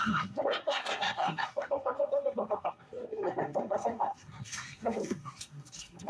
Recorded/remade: remade